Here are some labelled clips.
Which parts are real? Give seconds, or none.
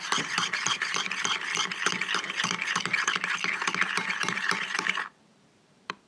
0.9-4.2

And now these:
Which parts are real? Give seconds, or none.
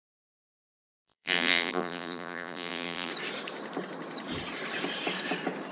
3.1-5.7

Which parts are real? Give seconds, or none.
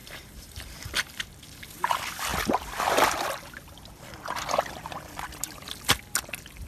0.7-6.7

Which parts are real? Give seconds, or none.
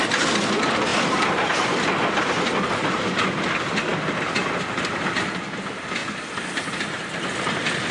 0.0-6.0; 7.0-7.9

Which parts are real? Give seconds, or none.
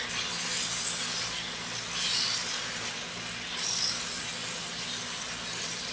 0.0-5.9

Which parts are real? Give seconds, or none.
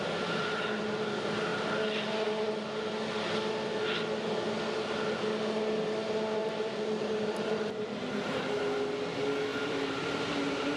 0.0-6.4; 8.6-9.5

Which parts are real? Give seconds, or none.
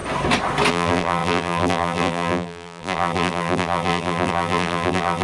0.0-0.7